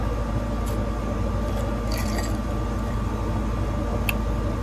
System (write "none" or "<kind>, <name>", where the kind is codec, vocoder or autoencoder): none